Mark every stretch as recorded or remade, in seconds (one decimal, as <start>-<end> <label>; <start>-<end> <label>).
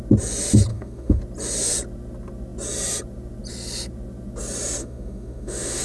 0.0-0.7 recorded; 0.7-1.2 remade; 1.2-4.8 recorded; 4.8-5.8 remade